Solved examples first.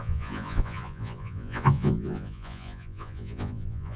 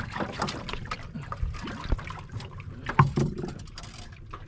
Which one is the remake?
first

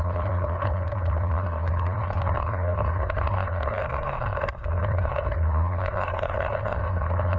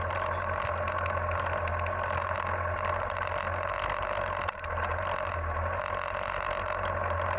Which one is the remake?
first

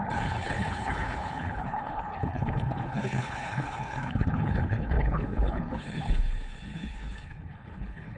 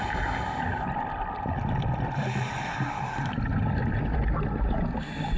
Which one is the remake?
first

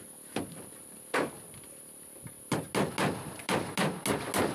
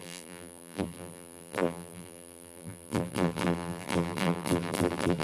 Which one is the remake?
second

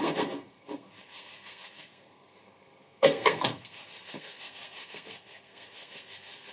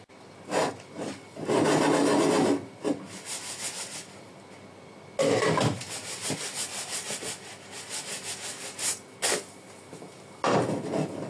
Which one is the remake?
first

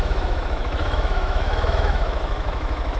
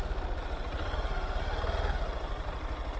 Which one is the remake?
first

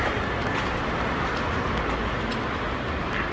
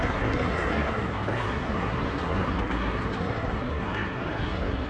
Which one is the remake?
second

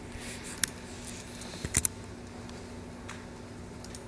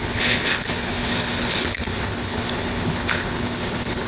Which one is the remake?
second